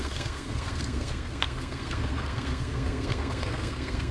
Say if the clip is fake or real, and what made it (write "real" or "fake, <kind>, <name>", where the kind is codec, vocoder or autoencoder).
fake, codec, SNAC